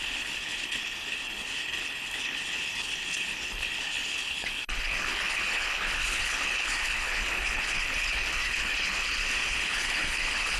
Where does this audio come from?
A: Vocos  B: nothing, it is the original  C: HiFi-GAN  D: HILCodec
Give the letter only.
D